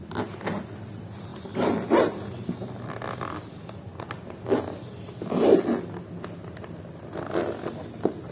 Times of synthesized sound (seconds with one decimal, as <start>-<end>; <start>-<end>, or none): none